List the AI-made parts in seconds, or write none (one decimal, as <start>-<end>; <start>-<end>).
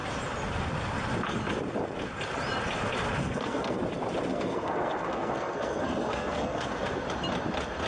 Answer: 3.2-3.8; 4.3-7.0